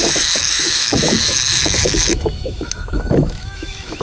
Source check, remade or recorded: remade